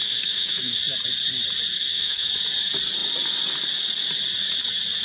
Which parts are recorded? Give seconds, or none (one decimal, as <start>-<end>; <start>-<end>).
0.8-1.7; 2.3-5.0